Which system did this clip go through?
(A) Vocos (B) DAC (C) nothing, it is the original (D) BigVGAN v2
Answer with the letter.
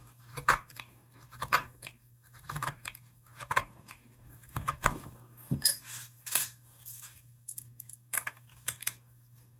B